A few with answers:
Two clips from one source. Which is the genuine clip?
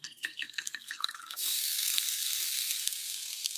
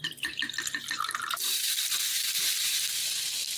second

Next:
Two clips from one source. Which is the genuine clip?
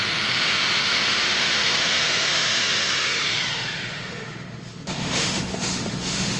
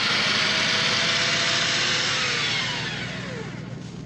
second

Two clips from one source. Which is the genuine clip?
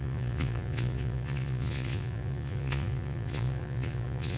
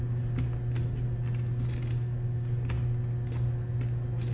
second